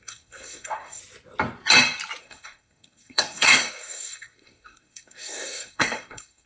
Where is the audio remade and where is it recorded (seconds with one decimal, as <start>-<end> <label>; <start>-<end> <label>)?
0.0-1.0 remade; 1.0-2.2 recorded; 2.2-6.5 remade